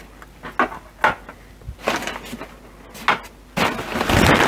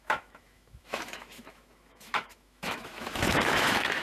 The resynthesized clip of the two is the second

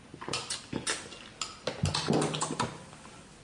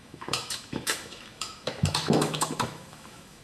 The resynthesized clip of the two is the second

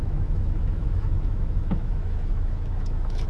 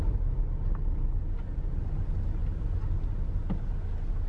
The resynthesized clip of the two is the first